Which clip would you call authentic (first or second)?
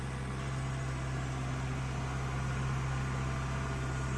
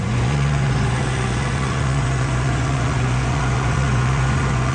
first